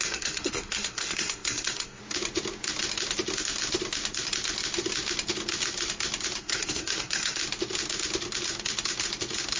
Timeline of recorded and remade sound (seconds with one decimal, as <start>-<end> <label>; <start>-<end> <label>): 0.0-2.0 remade; 2.0-6.4 recorded; 6.4-7.4 remade; 7.4-9.6 recorded